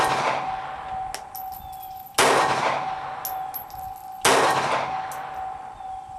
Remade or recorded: recorded